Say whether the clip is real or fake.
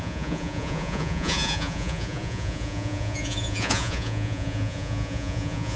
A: fake